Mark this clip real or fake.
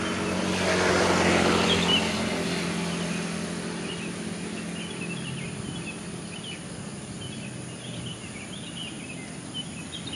real